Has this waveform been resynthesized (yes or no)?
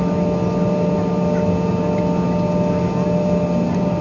no